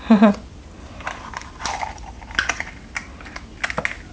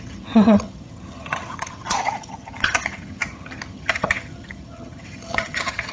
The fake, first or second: second